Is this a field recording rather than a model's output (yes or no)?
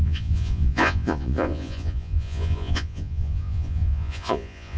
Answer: no